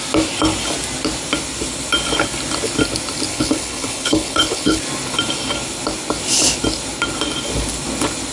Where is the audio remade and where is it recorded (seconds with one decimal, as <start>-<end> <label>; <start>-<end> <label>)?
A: 0.0-3.3 recorded; 3.3-4.8 remade; 4.8-8.3 recorded